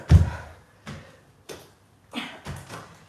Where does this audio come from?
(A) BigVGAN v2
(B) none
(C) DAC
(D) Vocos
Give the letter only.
B